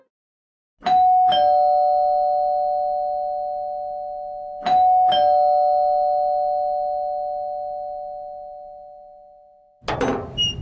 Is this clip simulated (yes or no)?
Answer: no